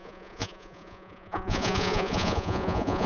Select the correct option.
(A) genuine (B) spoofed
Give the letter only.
B